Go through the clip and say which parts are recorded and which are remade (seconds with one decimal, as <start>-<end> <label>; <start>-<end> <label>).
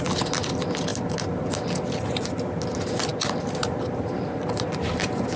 0.0-5.4 recorded